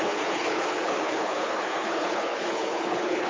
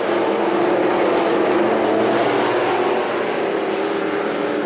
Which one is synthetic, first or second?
first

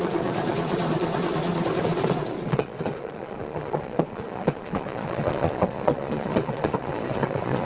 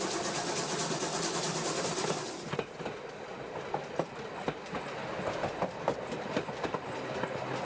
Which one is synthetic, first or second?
first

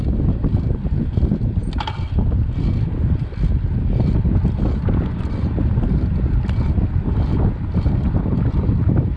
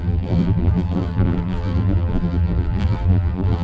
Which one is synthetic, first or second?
second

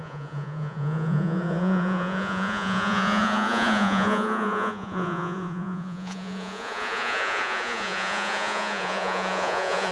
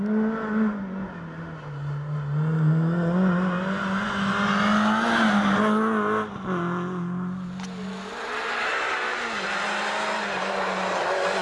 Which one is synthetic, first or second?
first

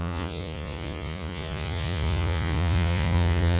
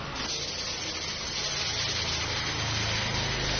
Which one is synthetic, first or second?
first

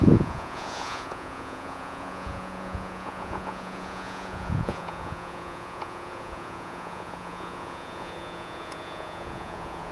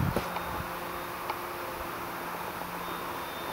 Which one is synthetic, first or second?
first